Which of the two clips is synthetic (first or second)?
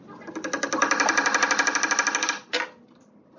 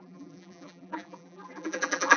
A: second